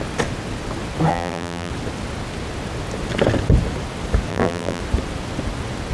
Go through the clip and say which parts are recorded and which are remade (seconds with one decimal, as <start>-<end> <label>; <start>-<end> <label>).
0.0-1.1 recorded; 1.1-1.7 remade; 1.7-4.3 recorded; 4.3-4.8 remade; 4.8-5.9 recorded